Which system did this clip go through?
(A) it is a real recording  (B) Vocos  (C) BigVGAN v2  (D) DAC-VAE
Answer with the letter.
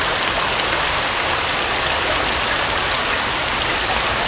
A